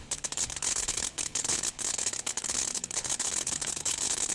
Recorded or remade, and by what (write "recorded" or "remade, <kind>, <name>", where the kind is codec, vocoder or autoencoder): remade, codec, HILCodec